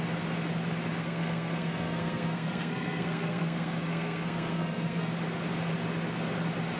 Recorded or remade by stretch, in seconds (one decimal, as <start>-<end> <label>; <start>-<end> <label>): 0.0-1.0 recorded; 1.0-5.1 remade; 5.1-6.8 recorded

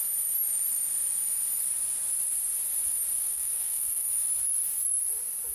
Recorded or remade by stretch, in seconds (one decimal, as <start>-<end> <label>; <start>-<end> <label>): 0.0-3.2 recorded; 3.2-4.1 remade; 4.1-5.5 recorded

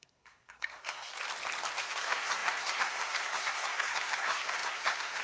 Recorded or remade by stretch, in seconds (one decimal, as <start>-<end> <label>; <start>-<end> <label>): 0.0-1.1 remade; 1.1-1.8 recorded; 1.8-5.2 remade

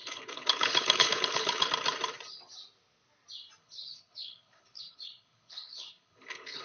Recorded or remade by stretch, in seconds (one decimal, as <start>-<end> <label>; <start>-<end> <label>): 0.0-1.7 remade; 1.7-3.6 recorded; 3.6-6.6 remade

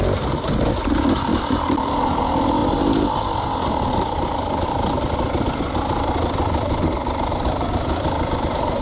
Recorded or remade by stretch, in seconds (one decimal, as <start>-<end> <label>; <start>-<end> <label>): 0.0-1.3 recorded; 1.3-1.9 remade; 1.9-8.8 recorded

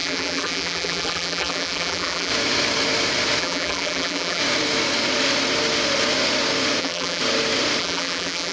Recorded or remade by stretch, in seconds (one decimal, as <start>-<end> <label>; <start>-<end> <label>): 0.0-2.3 remade; 2.3-3.4 recorded; 3.4-4.4 remade; 4.4-6.8 recorded; 6.8-7.2 remade; 7.2-7.8 recorded; 7.8-8.5 remade